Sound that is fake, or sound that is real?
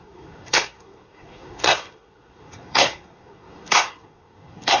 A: fake